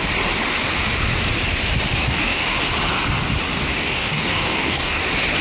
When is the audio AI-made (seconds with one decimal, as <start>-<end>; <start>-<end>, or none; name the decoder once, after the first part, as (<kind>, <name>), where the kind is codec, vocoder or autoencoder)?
2.0-2.6 (codec, DAC); 3.7-5.0